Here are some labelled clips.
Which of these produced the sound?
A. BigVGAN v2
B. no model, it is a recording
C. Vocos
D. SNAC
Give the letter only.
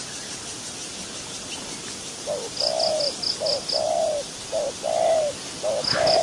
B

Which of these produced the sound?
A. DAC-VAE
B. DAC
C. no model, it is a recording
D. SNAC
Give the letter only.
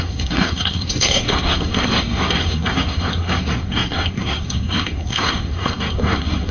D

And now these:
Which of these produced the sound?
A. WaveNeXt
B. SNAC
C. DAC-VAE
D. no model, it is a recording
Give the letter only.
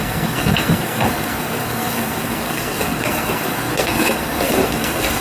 B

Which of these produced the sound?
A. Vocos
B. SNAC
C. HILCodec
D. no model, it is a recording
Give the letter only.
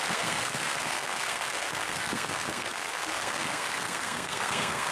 B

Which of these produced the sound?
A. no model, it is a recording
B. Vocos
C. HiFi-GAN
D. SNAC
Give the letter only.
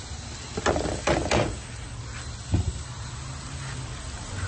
A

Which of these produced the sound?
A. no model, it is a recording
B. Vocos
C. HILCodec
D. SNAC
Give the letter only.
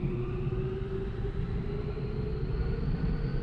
A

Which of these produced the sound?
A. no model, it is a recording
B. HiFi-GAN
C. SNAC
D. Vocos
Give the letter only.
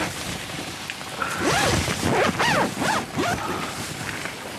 A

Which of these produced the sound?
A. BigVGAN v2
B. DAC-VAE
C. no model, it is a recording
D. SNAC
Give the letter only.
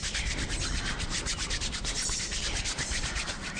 C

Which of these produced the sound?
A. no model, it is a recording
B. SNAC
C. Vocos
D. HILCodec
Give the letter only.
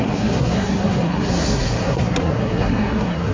B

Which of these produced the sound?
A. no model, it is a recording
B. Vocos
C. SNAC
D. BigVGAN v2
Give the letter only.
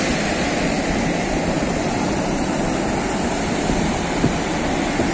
A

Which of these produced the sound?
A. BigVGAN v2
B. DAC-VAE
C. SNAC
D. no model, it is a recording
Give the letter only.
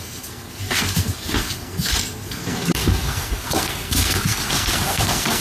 C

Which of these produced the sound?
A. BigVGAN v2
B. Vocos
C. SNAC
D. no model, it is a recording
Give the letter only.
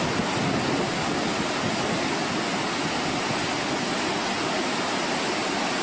D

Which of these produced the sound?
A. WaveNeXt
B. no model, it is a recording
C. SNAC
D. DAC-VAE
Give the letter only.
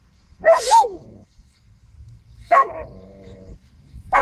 C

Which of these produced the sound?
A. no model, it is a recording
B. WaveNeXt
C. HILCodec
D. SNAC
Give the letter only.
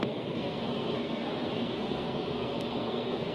D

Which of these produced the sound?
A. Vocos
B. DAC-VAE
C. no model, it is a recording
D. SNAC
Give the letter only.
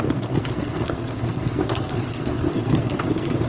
D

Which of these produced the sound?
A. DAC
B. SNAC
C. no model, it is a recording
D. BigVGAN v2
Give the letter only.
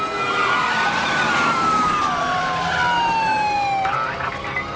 C